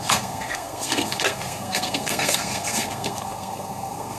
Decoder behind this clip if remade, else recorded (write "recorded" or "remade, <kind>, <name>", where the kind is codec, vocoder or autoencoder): remade, codec, SNAC